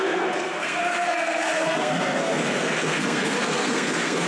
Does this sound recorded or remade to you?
remade